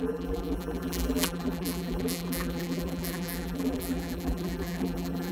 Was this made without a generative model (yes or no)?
no